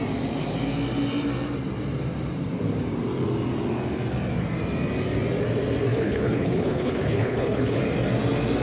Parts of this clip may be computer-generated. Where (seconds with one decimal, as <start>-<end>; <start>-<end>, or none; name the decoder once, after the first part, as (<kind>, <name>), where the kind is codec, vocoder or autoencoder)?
5.9-7.8 (codec, HILCodec)